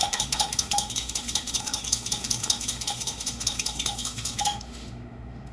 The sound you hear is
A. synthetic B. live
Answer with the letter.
A